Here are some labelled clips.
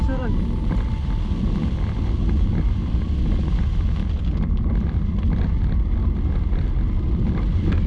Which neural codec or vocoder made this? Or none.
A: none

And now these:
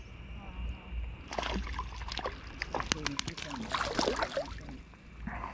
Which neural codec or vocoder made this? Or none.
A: none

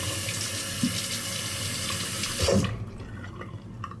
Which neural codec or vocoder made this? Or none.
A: none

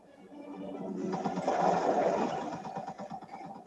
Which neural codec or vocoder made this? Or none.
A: none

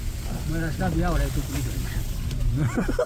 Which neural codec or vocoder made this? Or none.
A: none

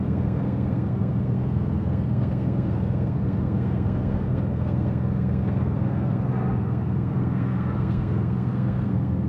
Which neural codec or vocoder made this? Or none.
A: codec, SNAC